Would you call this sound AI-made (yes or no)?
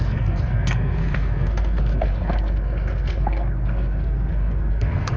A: yes